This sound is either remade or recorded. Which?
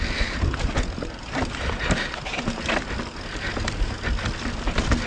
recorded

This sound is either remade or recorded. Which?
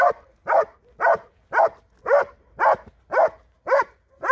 recorded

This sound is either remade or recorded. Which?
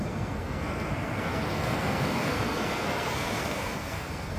remade